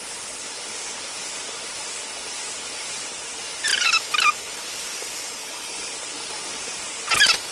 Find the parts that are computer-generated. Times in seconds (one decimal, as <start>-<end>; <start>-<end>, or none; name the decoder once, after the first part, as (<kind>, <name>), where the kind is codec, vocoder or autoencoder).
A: 5.4-5.9 (codec, HILCodec)